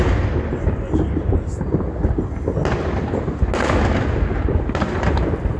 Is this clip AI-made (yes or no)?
no